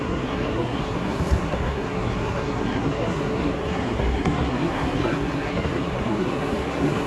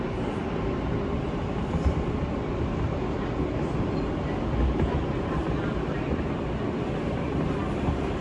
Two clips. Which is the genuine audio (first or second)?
second